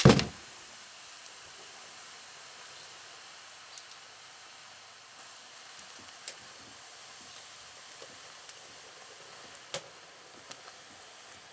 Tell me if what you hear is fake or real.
real